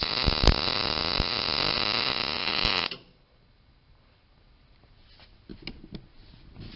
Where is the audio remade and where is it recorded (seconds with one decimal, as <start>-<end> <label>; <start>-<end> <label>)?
0.0-6.8 recorded